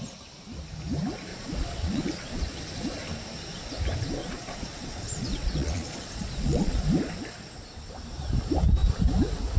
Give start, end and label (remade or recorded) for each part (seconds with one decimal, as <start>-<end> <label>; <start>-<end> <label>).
0.0-1.3 recorded; 1.3-2.6 remade; 2.6-4.2 recorded; 4.2-6.8 remade; 6.8-9.6 recorded